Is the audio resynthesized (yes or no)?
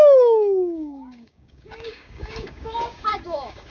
yes